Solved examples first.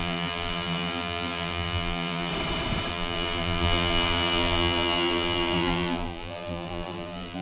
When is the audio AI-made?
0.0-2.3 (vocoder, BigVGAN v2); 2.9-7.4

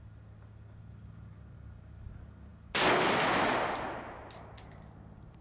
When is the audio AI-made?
none

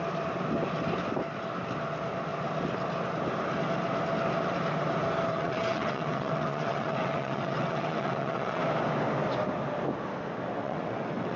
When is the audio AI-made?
5.3-8.6 (vocoder, WaveNeXt); 10.6-11.4

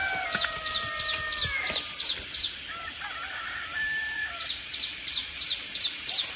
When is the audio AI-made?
3.5-6.4 (vocoder, BigVGAN v2)

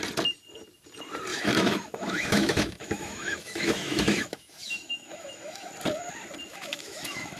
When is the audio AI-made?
1.3-5.7 (autoencoder, DAC-VAE); 6.5-7.4